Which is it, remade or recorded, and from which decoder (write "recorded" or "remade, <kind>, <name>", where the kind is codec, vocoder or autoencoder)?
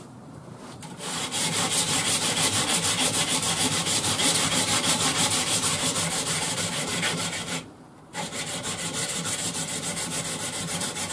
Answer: remade, vocoder, BigVGAN v2